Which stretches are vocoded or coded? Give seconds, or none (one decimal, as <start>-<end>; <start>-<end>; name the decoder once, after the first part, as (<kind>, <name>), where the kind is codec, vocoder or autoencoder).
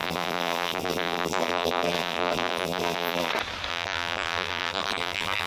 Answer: 0.0-3.3 (vocoder, BigVGAN v2); 3.7-5.5